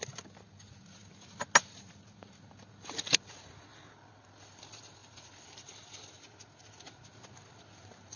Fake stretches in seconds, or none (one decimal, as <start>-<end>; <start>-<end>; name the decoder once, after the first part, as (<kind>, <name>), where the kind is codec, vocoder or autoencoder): 3.7-4.6 (vocoder, BigVGAN v2); 5.0-5.9